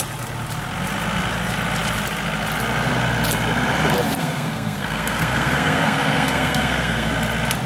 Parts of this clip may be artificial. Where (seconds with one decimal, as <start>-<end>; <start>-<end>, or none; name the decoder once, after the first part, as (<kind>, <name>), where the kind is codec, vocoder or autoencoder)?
4.2-7.1 (codec, SNAC)